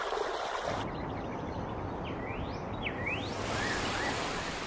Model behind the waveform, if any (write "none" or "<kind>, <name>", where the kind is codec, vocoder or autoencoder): none